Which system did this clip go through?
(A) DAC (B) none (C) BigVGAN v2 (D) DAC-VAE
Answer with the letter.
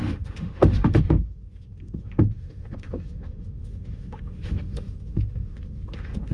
D